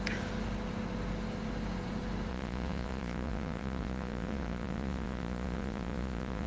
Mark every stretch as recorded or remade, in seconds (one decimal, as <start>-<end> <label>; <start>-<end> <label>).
0.0-2.3 recorded; 2.3-6.5 remade

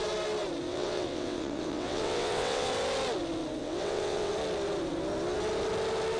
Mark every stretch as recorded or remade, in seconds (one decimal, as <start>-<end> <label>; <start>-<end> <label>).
0.0-0.7 recorded; 0.7-2.7 remade; 2.7-3.6 recorded; 3.6-4.3 remade; 4.3-6.2 recorded

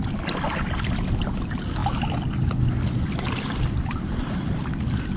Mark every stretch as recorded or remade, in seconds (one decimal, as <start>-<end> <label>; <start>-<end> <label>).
0.0-5.2 recorded

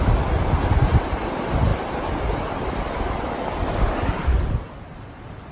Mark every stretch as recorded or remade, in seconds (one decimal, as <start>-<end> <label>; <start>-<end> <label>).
0.0-5.5 recorded

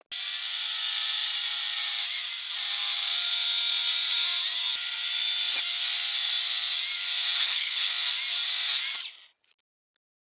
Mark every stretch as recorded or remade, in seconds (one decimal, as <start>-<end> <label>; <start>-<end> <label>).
0.0-7.4 recorded; 7.4-7.9 remade; 7.9-10.2 recorded

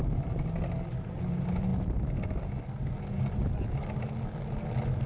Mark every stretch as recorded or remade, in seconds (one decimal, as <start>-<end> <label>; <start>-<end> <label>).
0.0-5.1 recorded

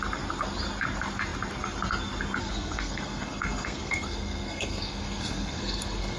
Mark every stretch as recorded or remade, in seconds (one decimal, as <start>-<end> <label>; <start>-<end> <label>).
0.0-2.4 recorded; 2.4-6.2 remade

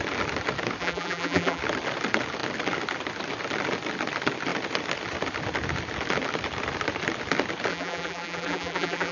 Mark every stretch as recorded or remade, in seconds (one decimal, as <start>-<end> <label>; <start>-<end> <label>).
0.0-0.8 recorded; 0.8-1.6 remade; 1.6-7.7 recorded; 7.7-9.1 remade